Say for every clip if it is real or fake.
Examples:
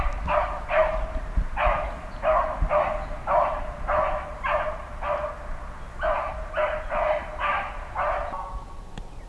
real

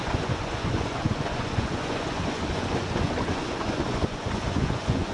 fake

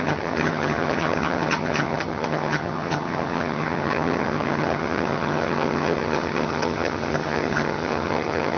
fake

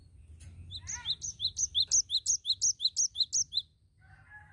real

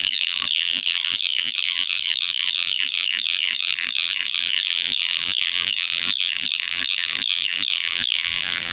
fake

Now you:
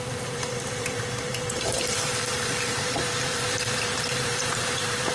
fake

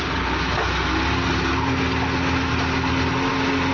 real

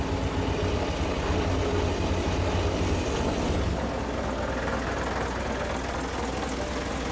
real